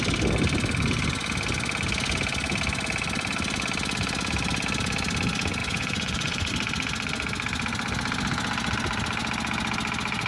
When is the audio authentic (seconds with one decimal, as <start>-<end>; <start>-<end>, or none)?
0.0-5.6; 6.5-10.3